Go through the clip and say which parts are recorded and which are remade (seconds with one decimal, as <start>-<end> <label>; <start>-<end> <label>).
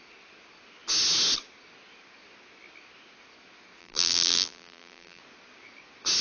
0.0-3.8 recorded; 3.8-5.2 remade; 5.2-6.2 recorded